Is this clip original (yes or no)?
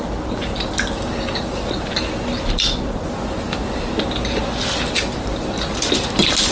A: yes